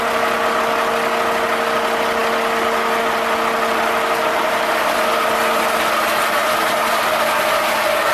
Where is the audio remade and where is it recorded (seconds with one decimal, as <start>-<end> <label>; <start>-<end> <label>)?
0.0-8.1 recorded